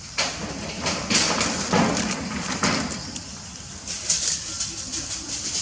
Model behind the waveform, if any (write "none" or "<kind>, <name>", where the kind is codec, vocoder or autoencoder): none